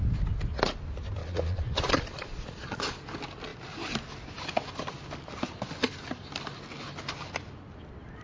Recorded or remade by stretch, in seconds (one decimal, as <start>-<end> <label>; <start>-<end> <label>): 0.0-1.2 recorded; 1.2-2.9 remade; 2.9-8.2 recorded